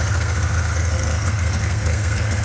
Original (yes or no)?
no